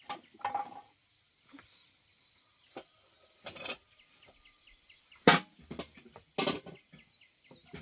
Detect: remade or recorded recorded